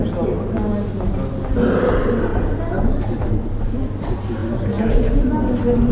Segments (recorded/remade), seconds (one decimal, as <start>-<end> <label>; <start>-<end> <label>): 0.0-2.3 recorded; 2.3-3.3 remade; 3.3-4.4 recorded; 4.4-5.3 remade; 5.3-5.9 recorded